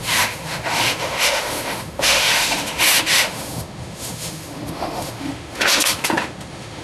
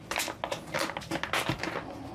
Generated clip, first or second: first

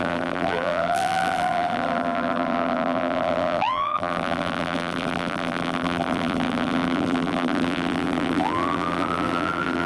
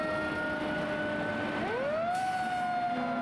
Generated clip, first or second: first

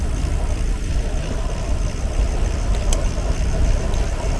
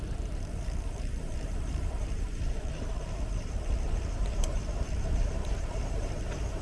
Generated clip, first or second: second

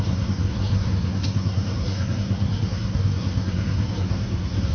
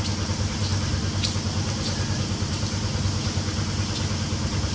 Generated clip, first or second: first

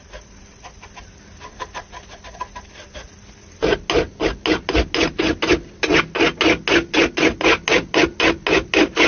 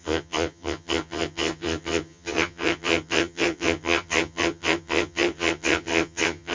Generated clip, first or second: second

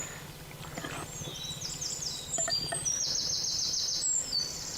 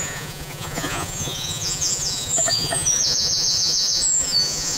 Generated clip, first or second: second